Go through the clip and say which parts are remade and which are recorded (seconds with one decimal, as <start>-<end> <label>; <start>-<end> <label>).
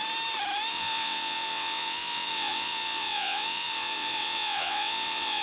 0.0-0.7 recorded; 0.7-5.4 remade